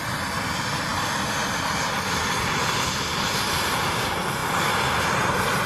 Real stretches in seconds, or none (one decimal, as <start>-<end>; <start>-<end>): 0.0-5.7